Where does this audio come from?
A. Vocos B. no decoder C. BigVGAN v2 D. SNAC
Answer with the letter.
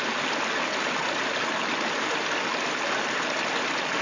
B